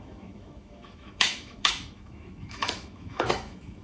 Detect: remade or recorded remade